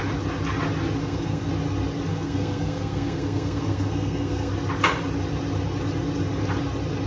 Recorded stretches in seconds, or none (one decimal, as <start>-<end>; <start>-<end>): 0.0-1.0; 1.5-2.1; 4.5-7.1